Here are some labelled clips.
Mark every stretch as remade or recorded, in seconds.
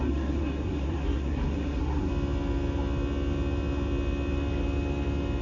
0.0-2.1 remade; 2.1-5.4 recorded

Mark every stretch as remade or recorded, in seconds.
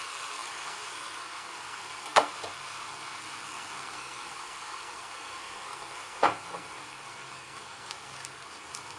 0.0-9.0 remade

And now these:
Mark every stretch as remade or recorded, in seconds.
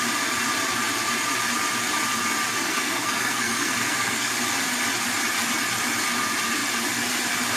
0.0-2.5 recorded; 2.5-4.3 remade; 4.3-7.6 recorded